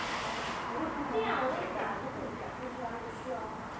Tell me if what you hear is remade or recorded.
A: recorded